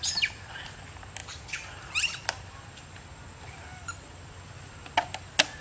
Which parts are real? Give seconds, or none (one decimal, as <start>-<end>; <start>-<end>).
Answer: 0.0-5.6